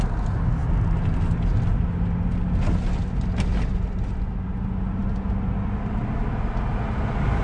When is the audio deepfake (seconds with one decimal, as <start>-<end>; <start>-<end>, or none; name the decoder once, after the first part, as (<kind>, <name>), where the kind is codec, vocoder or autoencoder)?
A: none